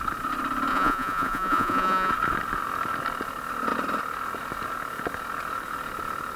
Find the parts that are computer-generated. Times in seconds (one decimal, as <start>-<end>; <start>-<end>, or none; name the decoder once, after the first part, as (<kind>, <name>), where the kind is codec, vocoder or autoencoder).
0.7-2.1 (vocoder, Vocos)